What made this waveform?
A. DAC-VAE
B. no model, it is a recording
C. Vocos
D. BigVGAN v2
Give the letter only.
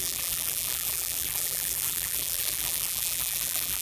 D